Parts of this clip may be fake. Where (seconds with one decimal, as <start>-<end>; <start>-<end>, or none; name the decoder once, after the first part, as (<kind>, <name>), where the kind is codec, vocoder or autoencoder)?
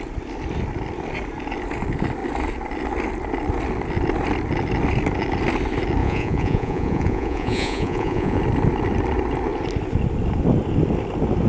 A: 6.0-8.4 (vocoder, Vocos)